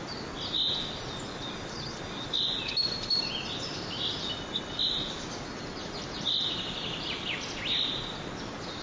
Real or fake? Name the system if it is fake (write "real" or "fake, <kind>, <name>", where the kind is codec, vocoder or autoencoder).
real